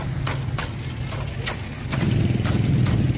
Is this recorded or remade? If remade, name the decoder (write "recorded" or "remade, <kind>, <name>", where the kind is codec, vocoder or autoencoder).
recorded